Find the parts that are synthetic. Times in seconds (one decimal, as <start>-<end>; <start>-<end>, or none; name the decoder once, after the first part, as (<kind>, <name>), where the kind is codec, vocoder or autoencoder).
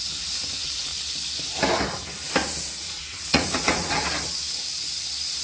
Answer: 0.0-0.9 (vocoder, Vocos); 2.8-4.0